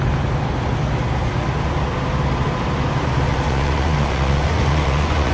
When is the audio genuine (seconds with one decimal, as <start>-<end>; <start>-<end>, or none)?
0.0-3.3